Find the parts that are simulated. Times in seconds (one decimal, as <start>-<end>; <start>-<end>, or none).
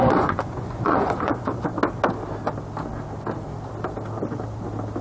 0.0-1.7